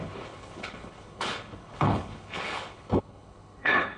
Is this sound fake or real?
fake